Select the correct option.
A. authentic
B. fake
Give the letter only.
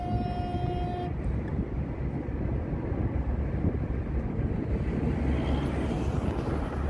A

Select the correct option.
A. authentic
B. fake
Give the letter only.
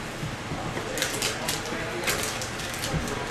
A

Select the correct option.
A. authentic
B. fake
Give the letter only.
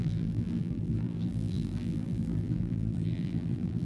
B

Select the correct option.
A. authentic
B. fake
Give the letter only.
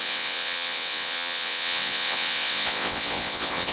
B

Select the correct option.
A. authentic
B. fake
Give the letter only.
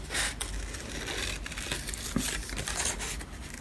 A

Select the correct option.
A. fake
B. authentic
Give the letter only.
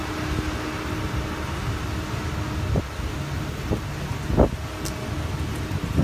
B